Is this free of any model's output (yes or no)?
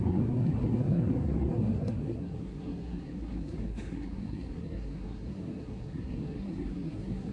no